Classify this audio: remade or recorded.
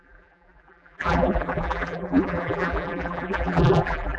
remade